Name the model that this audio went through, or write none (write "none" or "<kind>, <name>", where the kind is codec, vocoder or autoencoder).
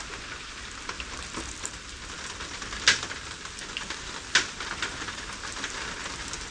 none